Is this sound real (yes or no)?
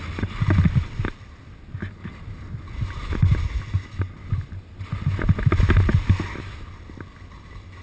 yes